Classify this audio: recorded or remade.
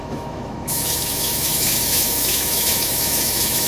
remade